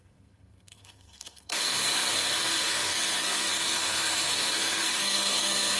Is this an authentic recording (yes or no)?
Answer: no